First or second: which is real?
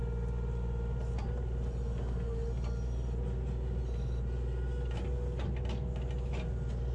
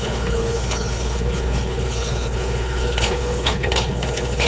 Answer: first